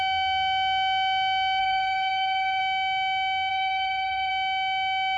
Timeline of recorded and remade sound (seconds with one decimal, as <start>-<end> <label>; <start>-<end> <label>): 0.0-1.6 recorded; 1.6-2.6 remade; 2.6-3.5 recorded; 3.5-4.3 remade; 4.3-5.2 recorded